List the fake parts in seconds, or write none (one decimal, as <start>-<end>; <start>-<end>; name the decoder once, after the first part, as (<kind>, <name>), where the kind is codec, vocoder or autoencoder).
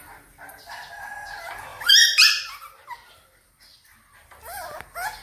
1.7-4.8 (vocoder, BigVGAN v2)